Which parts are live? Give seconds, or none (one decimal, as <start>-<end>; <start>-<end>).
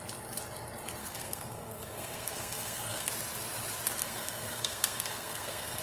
0.0-1.0; 3.1-4.0